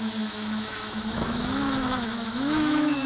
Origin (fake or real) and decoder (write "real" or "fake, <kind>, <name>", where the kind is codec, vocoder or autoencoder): fake, autoencoder, DAC-VAE